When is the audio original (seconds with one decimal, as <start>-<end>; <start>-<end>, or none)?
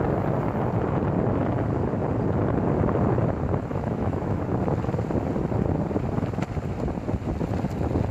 0.0-3.7; 4.4-8.1